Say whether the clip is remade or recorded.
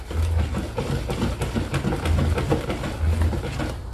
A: recorded